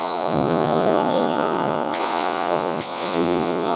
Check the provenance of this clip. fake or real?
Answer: fake